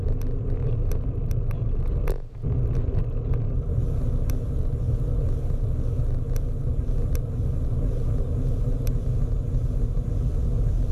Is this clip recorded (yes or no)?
yes